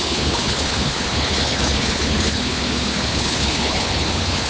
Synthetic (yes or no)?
yes